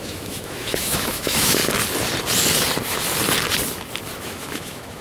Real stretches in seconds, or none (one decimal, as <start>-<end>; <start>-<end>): 1.6-4.2